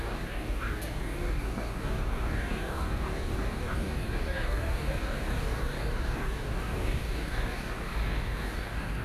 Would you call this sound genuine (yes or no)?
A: no